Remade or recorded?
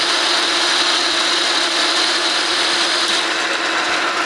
recorded